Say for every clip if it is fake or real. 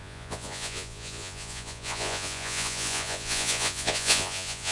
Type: fake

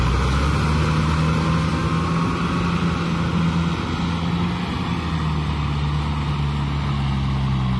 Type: real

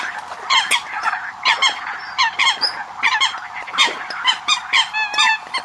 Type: real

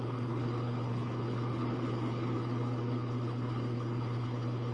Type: fake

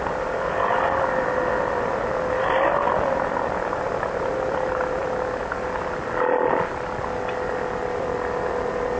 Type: real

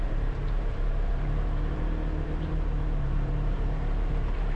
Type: fake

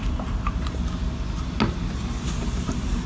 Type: real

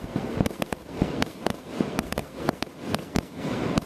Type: fake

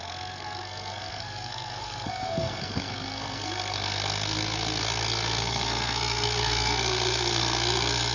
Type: fake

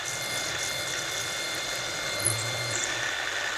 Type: real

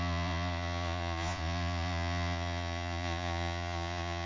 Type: fake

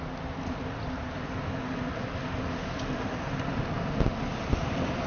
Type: real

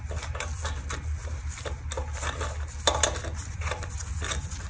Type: real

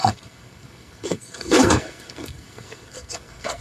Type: fake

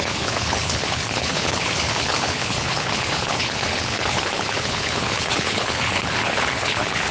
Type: fake